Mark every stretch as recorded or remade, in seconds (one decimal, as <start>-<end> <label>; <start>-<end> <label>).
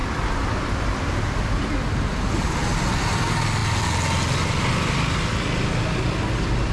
0.0-6.7 recorded